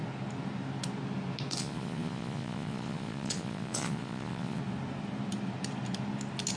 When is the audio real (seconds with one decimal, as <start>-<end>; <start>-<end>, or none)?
0.0-1.6; 4.6-6.6